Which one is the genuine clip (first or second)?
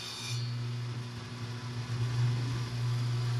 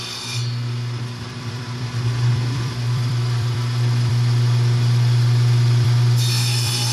first